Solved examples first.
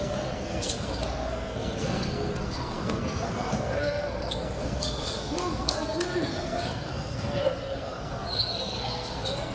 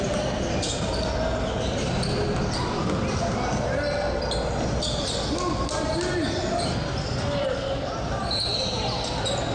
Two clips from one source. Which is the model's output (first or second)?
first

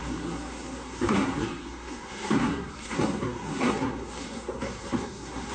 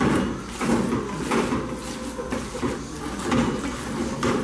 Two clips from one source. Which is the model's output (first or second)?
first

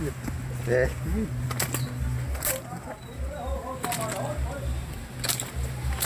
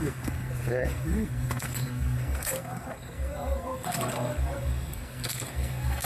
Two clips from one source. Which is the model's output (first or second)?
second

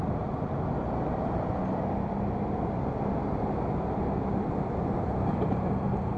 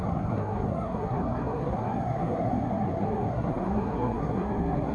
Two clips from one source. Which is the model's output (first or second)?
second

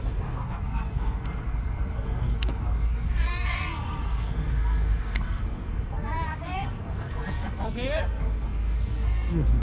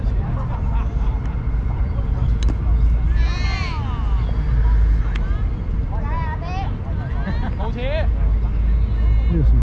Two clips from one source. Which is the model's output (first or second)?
first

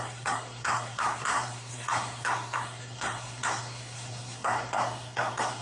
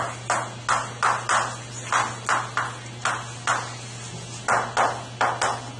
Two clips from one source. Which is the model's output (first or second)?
first